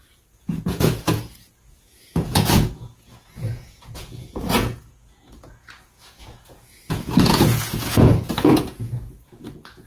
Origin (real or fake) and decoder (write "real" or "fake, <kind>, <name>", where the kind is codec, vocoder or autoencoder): fake, vocoder, Vocos